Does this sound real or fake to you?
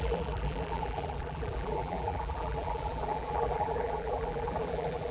fake